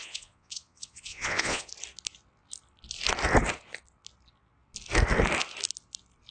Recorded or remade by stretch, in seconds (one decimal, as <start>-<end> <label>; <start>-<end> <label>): 0.0-1.7 remade; 1.7-6.3 recorded